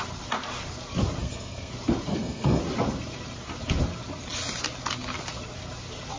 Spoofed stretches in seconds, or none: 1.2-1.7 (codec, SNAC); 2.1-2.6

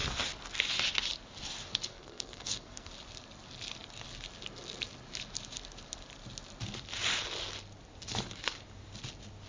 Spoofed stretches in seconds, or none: 1.9-2.9 (codec, SNAC)

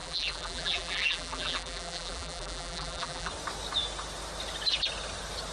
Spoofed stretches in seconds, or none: 0.0-3.3 (vocoder, BigVGAN v2)

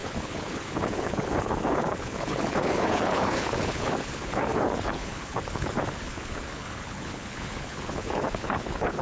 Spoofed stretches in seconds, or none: 0.0-9.0 (codec, HILCodec)

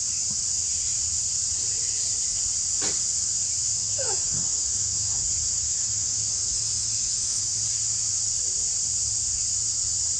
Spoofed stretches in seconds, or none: 3.8-7.4 (autoencoder, DAC-VAE)

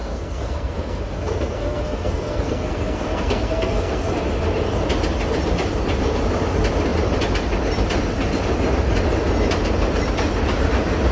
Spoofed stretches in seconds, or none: 0.0-4.1 (codec, SNAC)